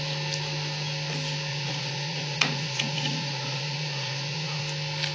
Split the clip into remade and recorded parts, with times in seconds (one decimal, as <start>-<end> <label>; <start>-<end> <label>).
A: 0.0-1.5 recorded; 1.5-4.6 remade; 4.6-5.1 recorded